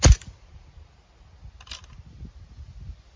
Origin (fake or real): real